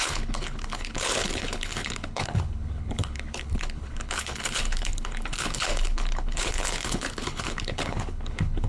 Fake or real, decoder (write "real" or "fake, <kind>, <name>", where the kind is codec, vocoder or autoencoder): fake, codec, HILCodec